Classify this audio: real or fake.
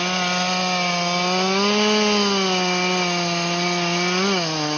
real